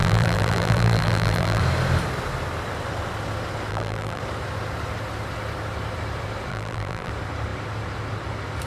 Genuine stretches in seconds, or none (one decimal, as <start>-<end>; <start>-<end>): 1.6-3.7; 4.2-6.5; 7.1-8.7